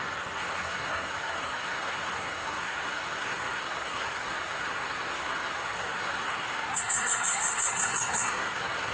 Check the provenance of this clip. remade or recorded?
remade